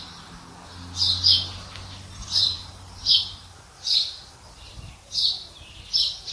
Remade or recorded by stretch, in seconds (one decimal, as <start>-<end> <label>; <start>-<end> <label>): 0.0-2.2 recorded; 2.2-3.1 remade; 3.1-6.3 recorded